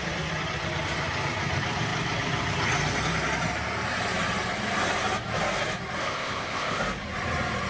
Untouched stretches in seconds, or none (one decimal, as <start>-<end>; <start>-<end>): 0.0-6.0; 6.8-7.7